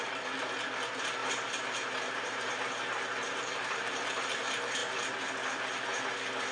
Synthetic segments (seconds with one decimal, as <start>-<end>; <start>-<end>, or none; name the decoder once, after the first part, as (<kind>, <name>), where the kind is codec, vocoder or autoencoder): 1.2-2.6 (vocoder, BigVGAN v2); 3.3-3.9